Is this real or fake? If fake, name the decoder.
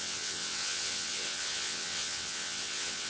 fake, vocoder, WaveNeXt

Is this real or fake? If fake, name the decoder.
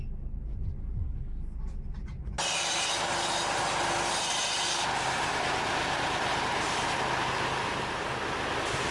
real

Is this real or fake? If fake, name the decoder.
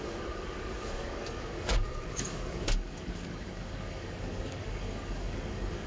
fake, codec, DAC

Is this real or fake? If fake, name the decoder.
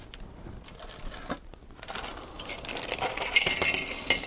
real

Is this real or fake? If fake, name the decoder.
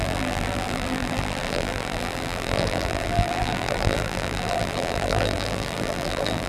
fake, vocoder, BigVGAN v2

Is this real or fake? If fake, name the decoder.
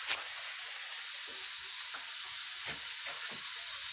real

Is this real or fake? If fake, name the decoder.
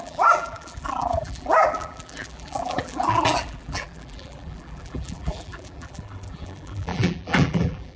fake, vocoder, BigVGAN v2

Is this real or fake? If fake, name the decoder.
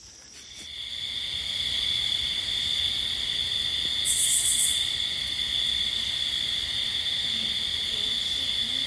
real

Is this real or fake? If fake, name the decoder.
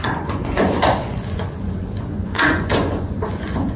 fake, vocoder, Vocos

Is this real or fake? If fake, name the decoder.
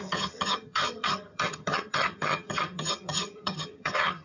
fake, vocoder, HiFi-GAN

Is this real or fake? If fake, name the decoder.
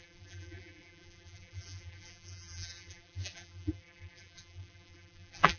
fake, vocoder, BigVGAN v2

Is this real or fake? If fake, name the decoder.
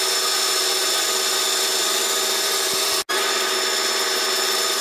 real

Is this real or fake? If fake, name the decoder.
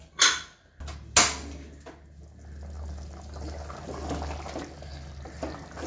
real